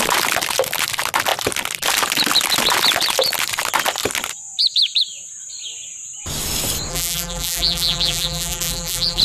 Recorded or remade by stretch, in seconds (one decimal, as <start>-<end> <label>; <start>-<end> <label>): 0.0-6.9 recorded; 6.9-9.2 remade